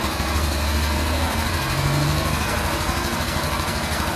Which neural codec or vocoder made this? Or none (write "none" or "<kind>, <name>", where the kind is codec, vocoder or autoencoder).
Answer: codec, SNAC